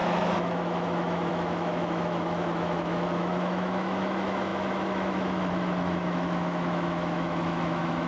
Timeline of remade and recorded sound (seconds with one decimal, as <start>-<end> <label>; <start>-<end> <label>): 0.0-8.1 remade